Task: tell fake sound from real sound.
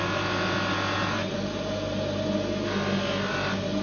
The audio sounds real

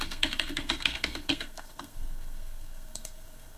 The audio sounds fake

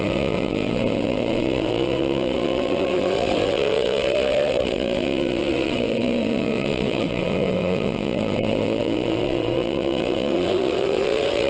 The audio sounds fake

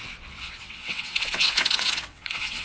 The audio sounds fake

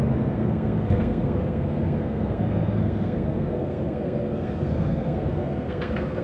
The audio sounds fake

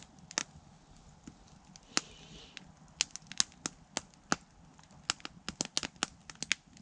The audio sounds real